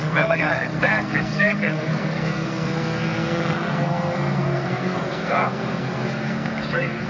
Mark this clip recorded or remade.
remade